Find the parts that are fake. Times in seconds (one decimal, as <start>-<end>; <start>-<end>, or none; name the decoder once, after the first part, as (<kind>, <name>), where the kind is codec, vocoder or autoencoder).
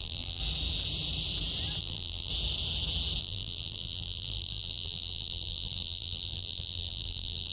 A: 0.0-0.4 (vocoder, BigVGAN v2); 1.8-2.3; 3.2-7.5